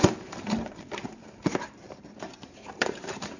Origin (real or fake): fake